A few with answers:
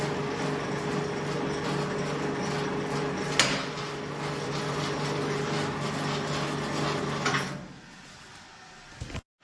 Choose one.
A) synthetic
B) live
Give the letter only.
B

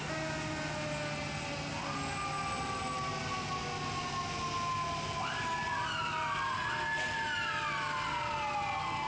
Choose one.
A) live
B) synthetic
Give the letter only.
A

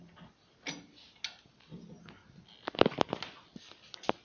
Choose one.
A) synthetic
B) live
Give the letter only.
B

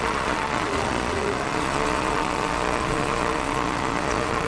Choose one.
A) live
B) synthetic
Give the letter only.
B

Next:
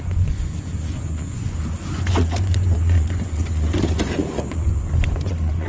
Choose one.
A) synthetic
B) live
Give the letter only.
A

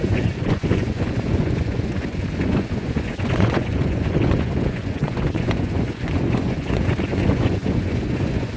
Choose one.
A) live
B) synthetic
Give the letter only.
B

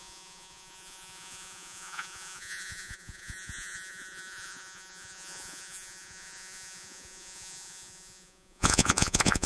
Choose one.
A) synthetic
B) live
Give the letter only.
A